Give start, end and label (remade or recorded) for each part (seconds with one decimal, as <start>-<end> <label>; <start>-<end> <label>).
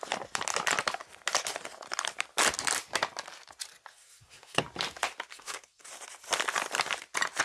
0.0-3.9 recorded; 3.9-4.6 remade; 4.6-5.3 recorded; 5.3-5.9 remade; 5.9-7.4 recorded